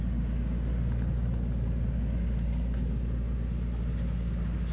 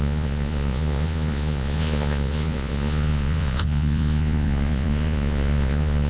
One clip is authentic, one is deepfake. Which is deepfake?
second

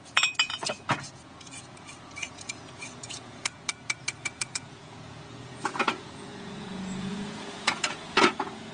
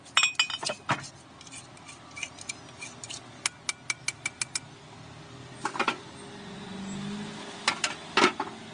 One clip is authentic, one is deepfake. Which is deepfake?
first